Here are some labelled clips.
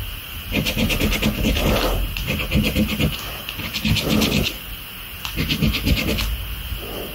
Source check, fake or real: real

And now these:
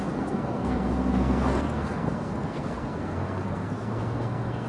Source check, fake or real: fake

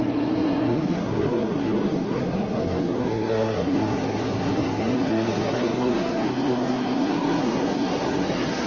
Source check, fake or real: fake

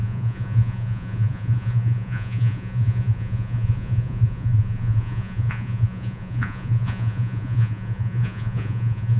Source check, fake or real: fake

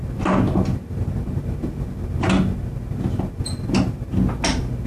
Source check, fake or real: real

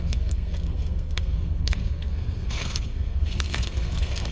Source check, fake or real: fake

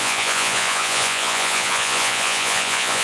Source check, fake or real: fake